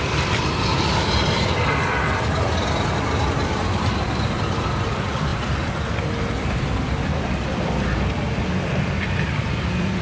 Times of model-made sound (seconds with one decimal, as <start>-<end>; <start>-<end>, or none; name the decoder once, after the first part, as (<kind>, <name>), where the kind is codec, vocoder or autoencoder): 0.0-5.3 (vocoder, BigVGAN v2); 6.2-10.0